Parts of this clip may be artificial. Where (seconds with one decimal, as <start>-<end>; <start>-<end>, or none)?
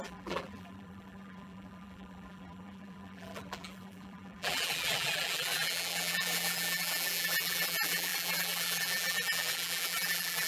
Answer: 0.0-10.5